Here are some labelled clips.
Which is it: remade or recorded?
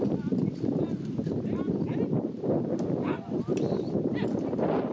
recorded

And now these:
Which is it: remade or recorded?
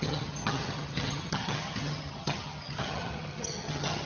remade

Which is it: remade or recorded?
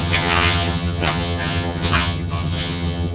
remade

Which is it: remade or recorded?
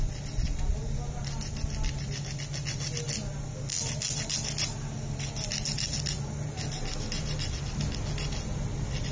recorded